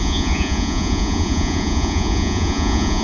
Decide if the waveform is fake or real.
fake